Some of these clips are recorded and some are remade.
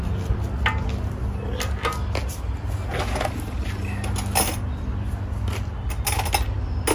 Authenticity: recorded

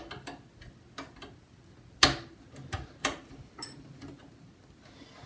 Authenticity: recorded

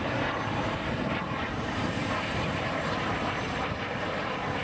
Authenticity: remade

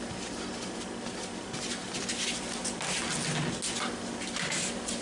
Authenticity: recorded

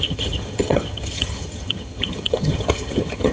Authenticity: remade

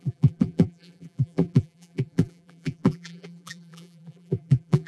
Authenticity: remade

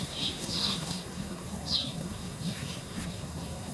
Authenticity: remade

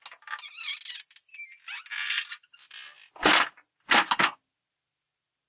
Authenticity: recorded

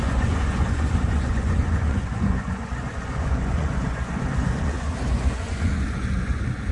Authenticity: remade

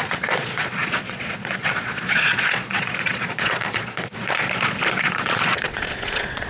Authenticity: remade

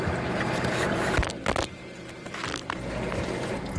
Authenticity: recorded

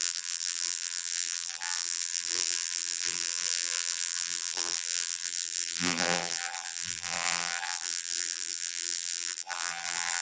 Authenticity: remade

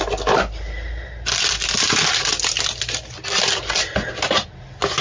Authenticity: recorded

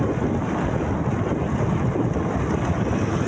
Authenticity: recorded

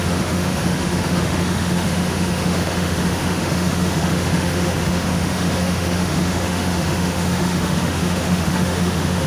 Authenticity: remade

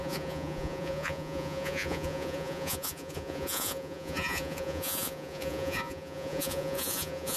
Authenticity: remade